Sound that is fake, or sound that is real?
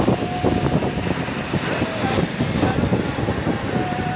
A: real